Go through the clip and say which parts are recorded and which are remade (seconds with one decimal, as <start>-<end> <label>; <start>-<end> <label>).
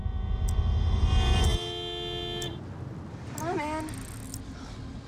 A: 0.0-5.1 recorded